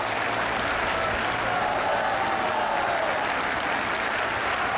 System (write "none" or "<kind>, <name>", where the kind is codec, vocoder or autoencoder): none